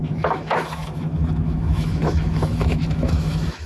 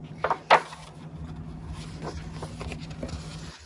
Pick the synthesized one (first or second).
first